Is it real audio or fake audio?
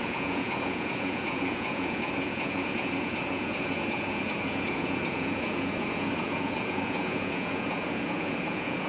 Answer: fake